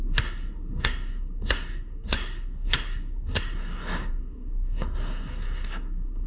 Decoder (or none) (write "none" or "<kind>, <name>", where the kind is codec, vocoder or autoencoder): codec, SNAC